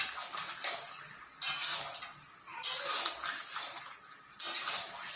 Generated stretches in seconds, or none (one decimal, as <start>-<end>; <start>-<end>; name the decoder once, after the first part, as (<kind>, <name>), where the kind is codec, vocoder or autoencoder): none